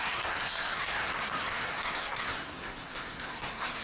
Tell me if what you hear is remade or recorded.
remade